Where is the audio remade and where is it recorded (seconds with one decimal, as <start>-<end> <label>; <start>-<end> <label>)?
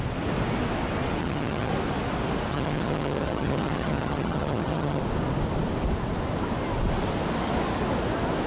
0.0-1.2 recorded; 1.2-1.7 remade; 1.7-2.5 recorded; 2.5-5.0 remade; 5.0-8.5 recorded